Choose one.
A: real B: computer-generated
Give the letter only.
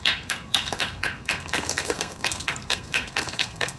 B